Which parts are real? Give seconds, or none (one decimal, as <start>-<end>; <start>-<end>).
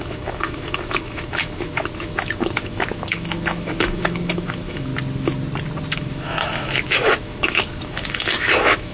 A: 4.9-6.0